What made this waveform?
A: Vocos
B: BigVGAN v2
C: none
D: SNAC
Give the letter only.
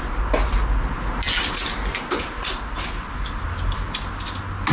C